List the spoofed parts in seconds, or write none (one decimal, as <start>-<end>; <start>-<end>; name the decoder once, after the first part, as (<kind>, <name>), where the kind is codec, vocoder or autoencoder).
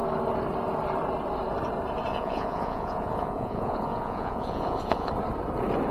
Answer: 2.1-5.1 (vocoder, Vocos)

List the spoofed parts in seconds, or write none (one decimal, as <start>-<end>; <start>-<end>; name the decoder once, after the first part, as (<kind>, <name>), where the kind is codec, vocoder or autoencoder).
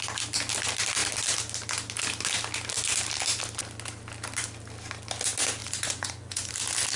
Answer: 5.6-6.5 (vocoder, Vocos)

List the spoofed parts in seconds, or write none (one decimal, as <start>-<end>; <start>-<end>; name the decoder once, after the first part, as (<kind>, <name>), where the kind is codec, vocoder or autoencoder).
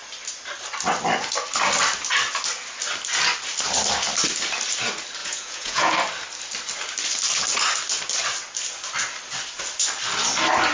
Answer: 5.2-5.9 (vocoder, Vocos)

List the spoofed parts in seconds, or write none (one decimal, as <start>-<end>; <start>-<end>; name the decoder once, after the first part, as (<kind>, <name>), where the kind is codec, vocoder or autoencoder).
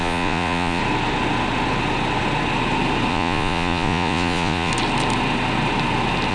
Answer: 0.0-0.8 (vocoder, Vocos); 3.1-4.7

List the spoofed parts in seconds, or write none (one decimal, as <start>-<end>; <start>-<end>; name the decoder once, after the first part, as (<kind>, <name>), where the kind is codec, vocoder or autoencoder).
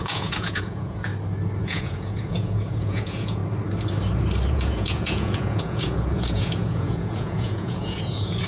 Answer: 0.0-1.1 (vocoder, Vocos); 1.6-3.4; 4.5-8.5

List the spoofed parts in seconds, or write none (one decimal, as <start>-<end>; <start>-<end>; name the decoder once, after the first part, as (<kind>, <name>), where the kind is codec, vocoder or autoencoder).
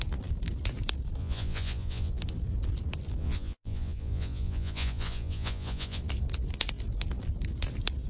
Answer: 1.2-2.1 (vocoder, Vocos); 3.2-6.0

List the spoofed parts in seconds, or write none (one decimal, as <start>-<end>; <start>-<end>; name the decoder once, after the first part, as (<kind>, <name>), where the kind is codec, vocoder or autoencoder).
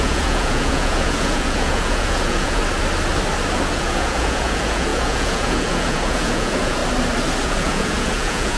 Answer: 0.0-2.6 (vocoder, Vocos); 3.7-6.8; 7.4-8.6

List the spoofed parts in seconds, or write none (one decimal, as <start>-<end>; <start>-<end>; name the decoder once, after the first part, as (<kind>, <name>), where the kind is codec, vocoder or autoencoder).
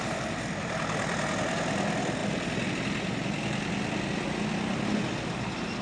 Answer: none